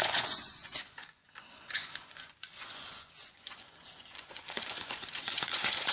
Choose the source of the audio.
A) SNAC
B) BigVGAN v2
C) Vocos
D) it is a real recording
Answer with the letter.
C